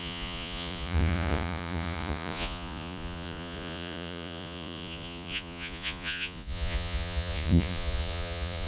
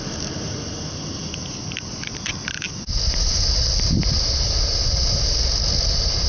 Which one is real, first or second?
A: second